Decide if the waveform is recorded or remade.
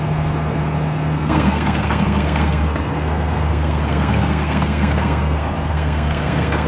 remade